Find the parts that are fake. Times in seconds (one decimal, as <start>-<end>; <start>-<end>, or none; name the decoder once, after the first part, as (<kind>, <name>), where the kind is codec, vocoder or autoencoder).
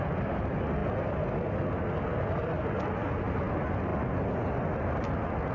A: none